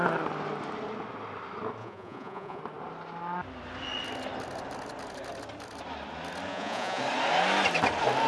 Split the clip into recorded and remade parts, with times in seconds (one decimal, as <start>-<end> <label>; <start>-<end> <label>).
0.0-1.8 recorded; 1.8-2.6 remade; 2.6-6.5 recorded; 6.5-7.0 remade; 7.0-8.3 recorded